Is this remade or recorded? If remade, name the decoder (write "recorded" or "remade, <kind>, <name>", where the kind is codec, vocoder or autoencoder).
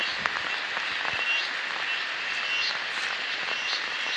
recorded